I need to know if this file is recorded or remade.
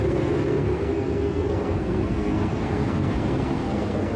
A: remade